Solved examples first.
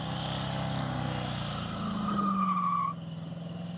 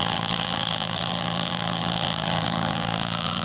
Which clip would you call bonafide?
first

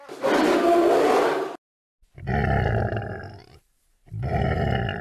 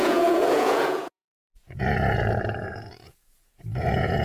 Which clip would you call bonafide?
first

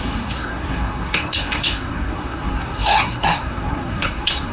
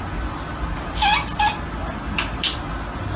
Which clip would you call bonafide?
second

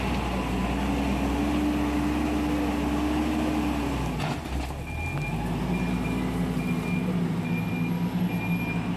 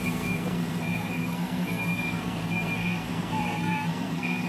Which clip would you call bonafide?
first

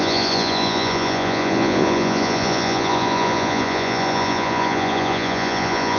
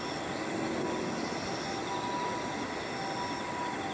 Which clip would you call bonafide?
second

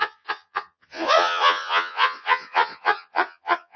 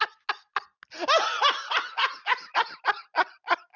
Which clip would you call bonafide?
second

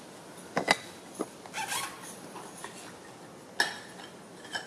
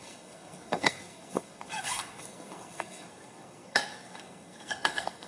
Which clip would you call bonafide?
first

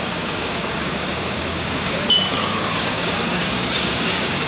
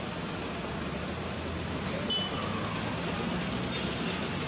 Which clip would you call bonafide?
second